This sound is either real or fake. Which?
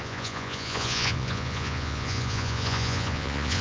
fake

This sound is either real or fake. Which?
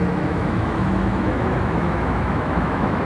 fake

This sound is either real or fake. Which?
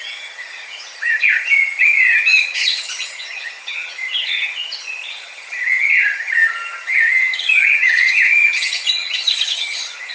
fake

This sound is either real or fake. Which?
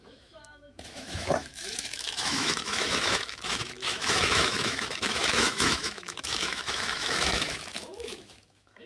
fake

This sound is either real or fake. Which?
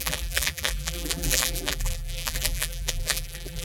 fake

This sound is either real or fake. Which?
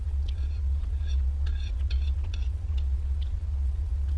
fake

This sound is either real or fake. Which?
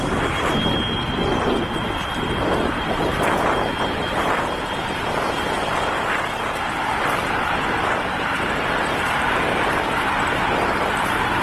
fake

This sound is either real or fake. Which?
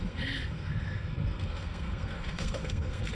fake